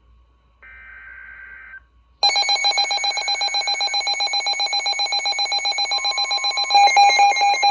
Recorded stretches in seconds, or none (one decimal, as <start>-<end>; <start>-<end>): 0.0-2.6; 3.2-7.7